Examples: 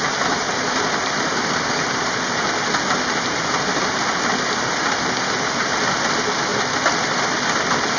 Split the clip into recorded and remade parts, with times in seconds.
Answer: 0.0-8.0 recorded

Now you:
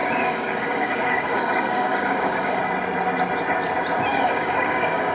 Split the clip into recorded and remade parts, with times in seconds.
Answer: 0.0-2.6 remade; 2.6-4.1 recorded; 4.1-5.1 remade

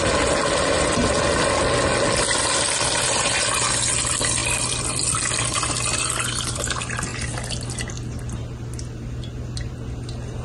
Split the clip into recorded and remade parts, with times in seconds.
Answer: 0.0-10.4 recorded

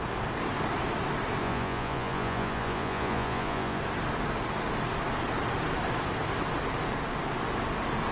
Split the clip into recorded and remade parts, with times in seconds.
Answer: 0.0-1.4 recorded; 1.4-3.8 remade; 3.8-8.1 recorded

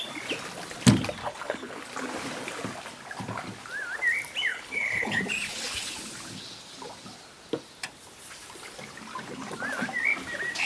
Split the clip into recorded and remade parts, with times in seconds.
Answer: 0.0-1.2 recorded; 1.2-1.8 remade; 1.8-4.5 recorded; 4.5-5.2 remade; 5.2-10.7 recorded